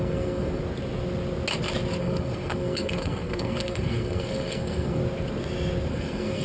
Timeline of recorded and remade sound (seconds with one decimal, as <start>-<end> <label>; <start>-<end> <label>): 0.0-0.6 remade; 0.6-2.0 recorded; 2.0-5.0 remade; 5.0-5.9 recorded; 5.9-6.4 remade